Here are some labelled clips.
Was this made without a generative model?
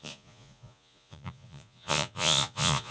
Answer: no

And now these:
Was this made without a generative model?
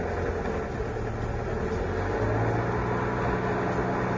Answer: yes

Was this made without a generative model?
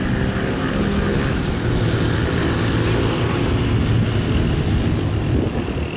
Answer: yes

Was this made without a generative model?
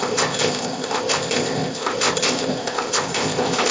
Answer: no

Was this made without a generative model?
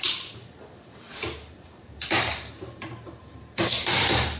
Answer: no